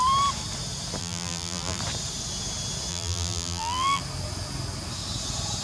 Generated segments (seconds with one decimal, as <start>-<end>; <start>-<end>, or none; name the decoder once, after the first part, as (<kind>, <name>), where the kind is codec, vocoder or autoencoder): 1.0-1.8 (vocoder, BigVGAN v2); 2.9-4.0

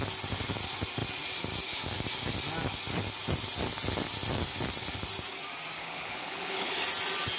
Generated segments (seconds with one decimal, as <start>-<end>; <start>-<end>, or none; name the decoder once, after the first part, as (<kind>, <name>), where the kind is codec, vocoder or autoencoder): 5.8-6.7 (codec, HILCodec)

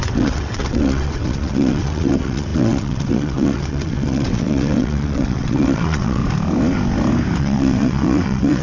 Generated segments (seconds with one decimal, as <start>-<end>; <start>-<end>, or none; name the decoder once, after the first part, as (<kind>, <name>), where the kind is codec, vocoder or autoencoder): 0.0-6.2 (vocoder, WaveNeXt); 7.4-8.6

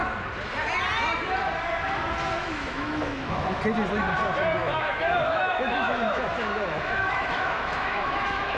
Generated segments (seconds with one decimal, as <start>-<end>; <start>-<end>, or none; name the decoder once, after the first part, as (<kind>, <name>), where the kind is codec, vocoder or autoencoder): 2.4-3.6 (autoencoder, DAC-VAE); 4.6-8.6

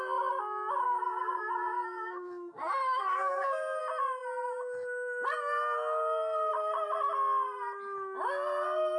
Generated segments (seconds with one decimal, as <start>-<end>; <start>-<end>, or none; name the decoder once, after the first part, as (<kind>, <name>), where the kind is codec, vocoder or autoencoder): 0.8-3.8 (codec, SNAC)

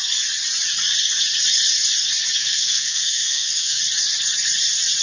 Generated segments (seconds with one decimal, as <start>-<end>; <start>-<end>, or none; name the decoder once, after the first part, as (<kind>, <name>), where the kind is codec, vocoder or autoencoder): 2.4-3.8 (codec, SNAC)

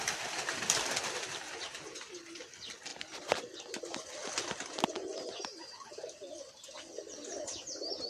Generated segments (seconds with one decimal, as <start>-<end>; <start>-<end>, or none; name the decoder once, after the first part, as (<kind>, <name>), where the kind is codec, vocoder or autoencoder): none

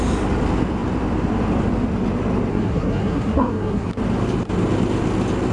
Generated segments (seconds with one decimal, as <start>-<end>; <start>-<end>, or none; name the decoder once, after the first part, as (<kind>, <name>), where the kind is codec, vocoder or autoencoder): 2.5-3.9 (codec, SNAC)